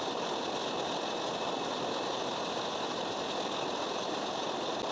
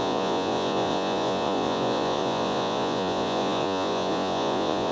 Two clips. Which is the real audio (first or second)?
first